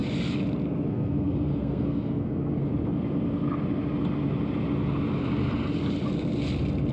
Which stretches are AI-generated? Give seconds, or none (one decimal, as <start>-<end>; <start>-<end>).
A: 0.9-2.7